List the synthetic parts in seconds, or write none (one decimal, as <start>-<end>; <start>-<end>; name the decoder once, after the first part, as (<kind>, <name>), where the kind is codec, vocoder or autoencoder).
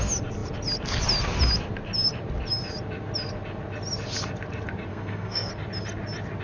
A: 4.9-5.5 (codec, SNAC)